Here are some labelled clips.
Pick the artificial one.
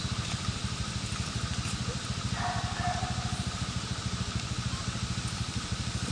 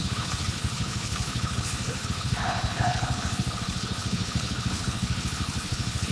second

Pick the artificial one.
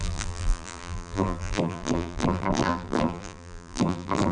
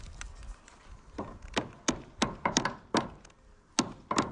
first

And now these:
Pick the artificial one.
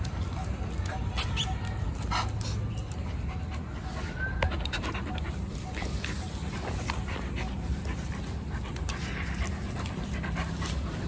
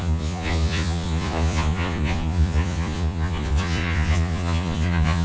second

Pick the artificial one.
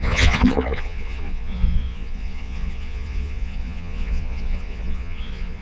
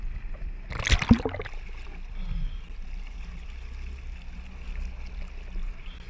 first